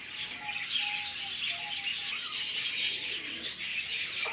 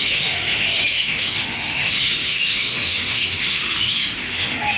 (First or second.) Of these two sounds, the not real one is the second